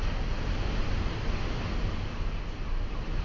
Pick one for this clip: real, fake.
real